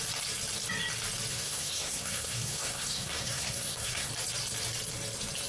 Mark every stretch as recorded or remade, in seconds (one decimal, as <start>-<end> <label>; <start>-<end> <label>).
0.0-1.3 recorded; 1.3-4.1 remade; 4.1-5.5 recorded